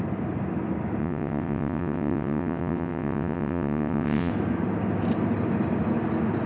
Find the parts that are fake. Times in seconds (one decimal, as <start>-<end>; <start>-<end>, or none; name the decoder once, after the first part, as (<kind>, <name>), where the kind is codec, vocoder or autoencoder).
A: 1.0-4.3 (vocoder, WaveNeXt)